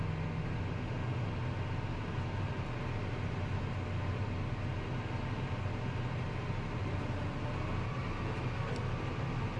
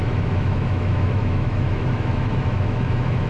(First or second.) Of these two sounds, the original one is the first